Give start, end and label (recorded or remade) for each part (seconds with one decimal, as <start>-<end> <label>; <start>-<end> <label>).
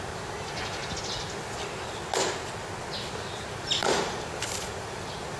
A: 0.0-0.8 remade; 0.8-3.5 recorded; 3.5-5.4 remade